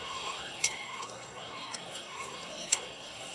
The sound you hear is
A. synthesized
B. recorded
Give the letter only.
A